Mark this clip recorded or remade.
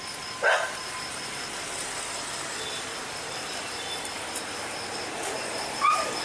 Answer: recorded